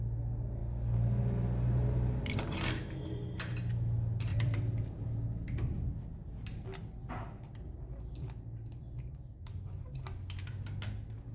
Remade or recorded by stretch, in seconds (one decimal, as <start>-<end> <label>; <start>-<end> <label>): 0.0-0.6 recorded; 0.6-2.7 remade; 2.7-4.3 recorded; 4.3-5.0 remade; 5.0-8.2 recorded; 8.2-9.1 remade; 9.1-11.3 recorded